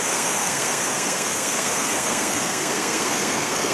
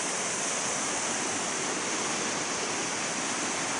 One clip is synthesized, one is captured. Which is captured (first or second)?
second